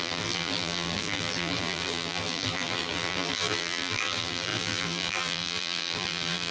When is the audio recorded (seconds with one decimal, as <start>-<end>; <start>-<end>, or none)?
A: none